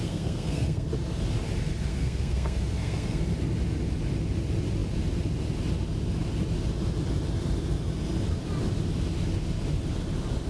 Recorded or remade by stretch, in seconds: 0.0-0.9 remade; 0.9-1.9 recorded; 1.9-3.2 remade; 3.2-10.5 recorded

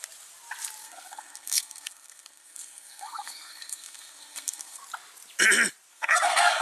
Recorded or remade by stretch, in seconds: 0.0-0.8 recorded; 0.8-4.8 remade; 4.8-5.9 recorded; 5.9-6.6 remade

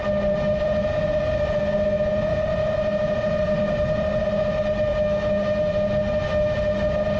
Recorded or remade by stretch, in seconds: 0.0-7.2 recorded

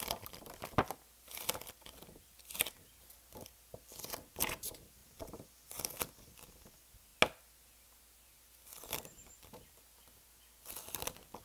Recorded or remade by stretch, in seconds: 0.0-11.4 recorded